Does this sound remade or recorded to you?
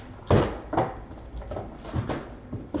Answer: recorded